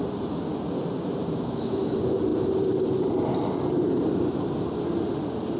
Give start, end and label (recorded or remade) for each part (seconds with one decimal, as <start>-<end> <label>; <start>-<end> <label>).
0.0-1.2 recorded; 1.2-1.9 remade; 1.9-5.6 recorded